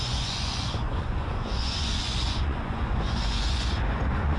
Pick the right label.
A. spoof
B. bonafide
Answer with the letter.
A